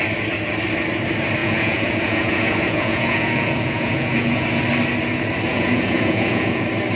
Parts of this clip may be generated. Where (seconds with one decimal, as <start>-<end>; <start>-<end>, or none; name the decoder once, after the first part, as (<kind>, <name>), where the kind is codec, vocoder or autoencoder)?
1.4-4.6 (vocoder, Vocos); 5.5-6.6